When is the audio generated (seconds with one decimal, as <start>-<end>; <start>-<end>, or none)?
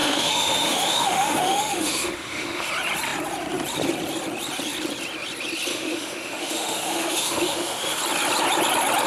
0.0-2.7; 5.7-8.0